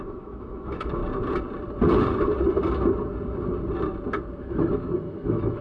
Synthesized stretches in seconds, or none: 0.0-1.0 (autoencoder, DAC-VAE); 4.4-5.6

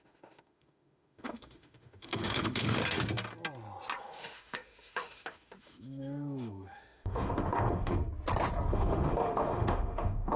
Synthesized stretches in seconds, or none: 0.0-2.8 (autoencoder, DAC-VAE); 4.0-8.0; 8.7-10.4

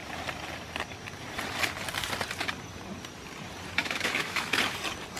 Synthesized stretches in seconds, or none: 3.8-4.6 (autoencoder, DAC-VAE)